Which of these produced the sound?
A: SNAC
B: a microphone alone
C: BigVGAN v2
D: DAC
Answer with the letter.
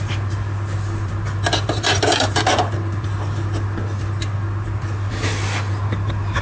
B